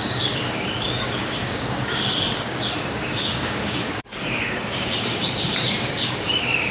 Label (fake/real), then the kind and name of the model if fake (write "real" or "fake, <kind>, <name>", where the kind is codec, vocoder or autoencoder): fake, codec, DAC